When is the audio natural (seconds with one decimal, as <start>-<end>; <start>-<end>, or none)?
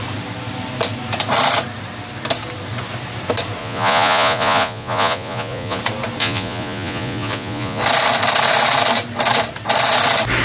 0.0-3.6; 5.8-6.2; 7.8-10.4